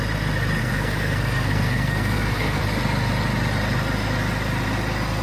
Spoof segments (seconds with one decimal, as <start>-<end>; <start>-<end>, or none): 0.6-2.6